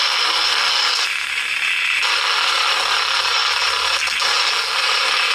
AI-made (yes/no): no